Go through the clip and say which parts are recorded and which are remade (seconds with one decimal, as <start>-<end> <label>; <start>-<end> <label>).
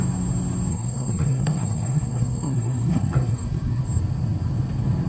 0.0-0.7 recorded; 0.7-3.8 remade; 3.8-5.1 recorded